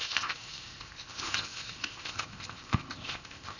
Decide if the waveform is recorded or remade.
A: remade